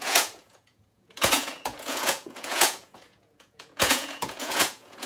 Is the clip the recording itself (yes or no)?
no